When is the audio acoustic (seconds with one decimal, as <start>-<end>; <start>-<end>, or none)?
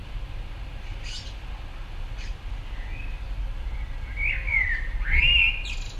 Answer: 0.0-4.5; 5.2-6.0